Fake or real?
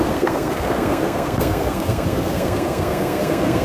fake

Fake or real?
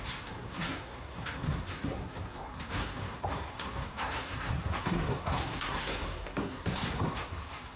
fake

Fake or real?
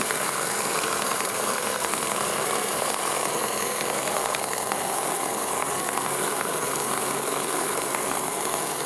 fake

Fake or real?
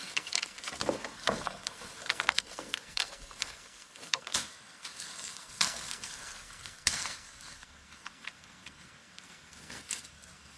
fake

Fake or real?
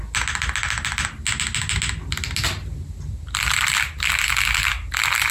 real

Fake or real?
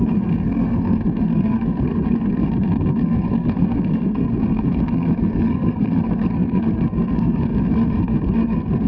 fake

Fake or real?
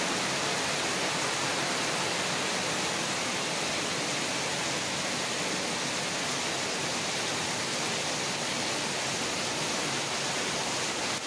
real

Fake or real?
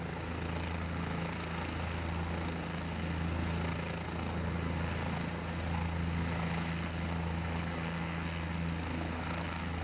real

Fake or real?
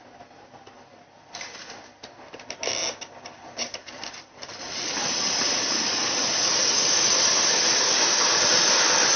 real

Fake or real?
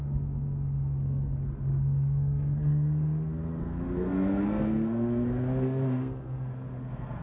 fake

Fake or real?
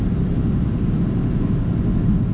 real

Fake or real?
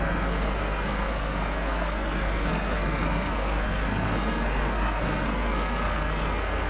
fake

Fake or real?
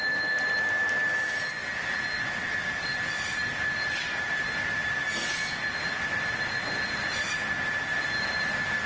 real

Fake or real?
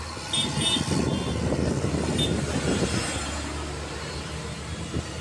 real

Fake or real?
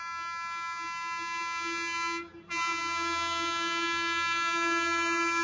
real